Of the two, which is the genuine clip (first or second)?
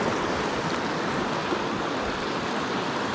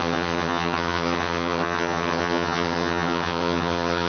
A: first